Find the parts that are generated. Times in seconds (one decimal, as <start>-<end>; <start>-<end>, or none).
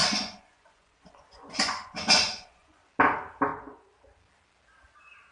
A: 0.0-2.8